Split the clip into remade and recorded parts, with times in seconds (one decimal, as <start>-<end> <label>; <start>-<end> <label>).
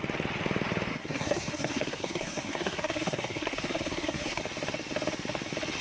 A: 0.0-0.9 recorded; 0.9-4.4 remade; 4.4-5.8 recorded